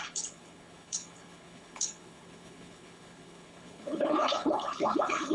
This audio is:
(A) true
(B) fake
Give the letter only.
B